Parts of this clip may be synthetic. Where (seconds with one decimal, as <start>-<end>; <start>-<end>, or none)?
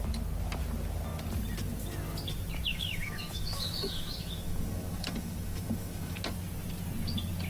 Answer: 2.7-6.2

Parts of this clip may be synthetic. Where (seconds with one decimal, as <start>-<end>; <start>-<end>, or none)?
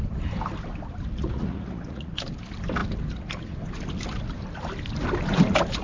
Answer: 1.2-2.1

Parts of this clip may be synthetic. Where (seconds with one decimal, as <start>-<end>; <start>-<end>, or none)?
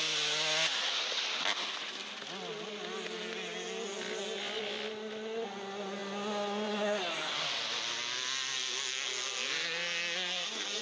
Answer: none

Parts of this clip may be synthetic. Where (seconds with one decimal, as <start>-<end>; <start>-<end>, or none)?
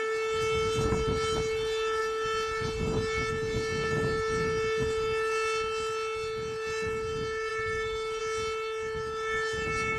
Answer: 7.5-8.2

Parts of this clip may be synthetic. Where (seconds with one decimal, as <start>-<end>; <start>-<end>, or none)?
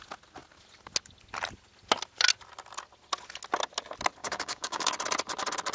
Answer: 4.2-4.9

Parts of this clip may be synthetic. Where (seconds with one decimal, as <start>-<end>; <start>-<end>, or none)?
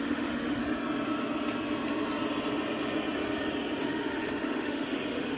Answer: 0.0-0.6; 3.8-5.4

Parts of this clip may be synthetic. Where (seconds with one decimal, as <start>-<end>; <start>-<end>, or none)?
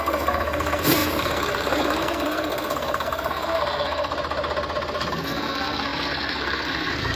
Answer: 0.0-4.1; 5.1-7.2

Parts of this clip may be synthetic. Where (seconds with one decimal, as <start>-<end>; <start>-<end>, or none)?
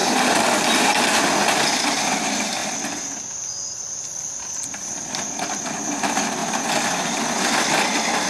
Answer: none